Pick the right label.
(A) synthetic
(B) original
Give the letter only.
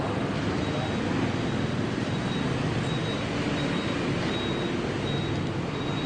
B